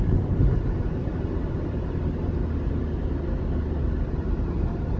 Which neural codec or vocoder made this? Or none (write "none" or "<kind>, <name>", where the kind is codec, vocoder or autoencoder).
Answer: none